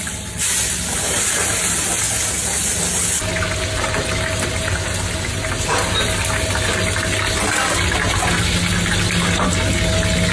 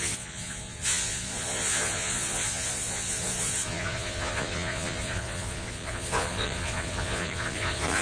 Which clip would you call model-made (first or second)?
second